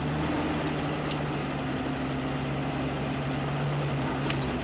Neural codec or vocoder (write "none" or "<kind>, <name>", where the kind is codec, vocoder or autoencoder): none